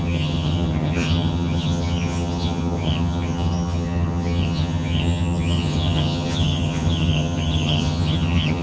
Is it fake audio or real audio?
fake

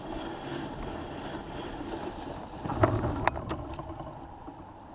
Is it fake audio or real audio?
real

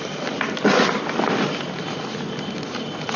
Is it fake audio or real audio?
real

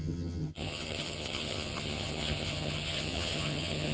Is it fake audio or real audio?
fake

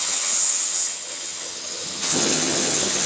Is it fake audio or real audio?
fake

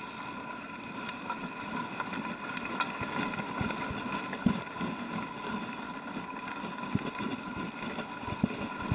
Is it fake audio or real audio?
real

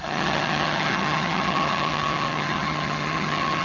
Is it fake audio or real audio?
fake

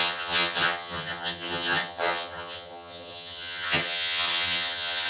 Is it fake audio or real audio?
fake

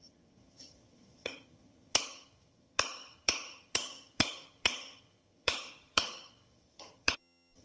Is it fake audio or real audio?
fake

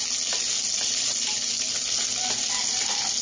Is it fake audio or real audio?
real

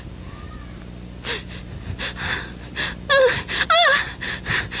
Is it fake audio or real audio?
real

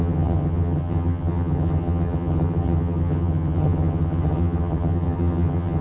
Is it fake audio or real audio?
fake